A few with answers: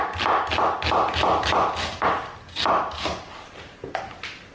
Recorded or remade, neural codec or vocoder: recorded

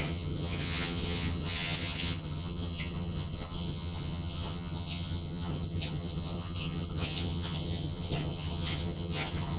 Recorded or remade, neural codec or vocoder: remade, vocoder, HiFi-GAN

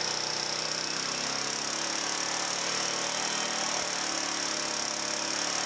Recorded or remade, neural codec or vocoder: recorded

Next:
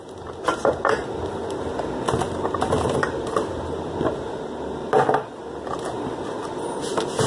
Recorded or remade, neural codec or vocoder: recorded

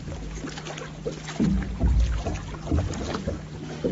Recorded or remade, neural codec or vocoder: recorded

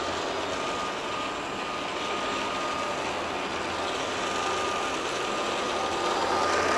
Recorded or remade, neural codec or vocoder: recorded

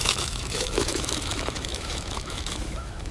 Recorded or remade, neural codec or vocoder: remade, autoencoder, DAC-VAE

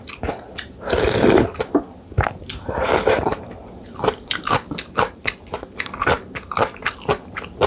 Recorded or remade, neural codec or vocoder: recorded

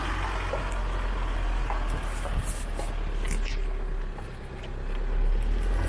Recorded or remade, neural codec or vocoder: recorded